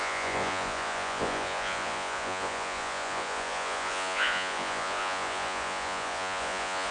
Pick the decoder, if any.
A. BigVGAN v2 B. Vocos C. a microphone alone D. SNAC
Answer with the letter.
B